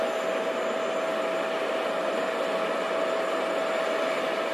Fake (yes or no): no